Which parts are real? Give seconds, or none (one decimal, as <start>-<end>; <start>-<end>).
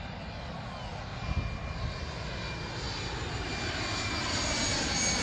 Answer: 0.0-5.2